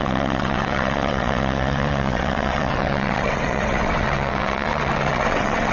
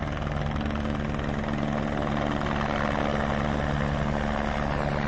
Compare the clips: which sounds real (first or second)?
second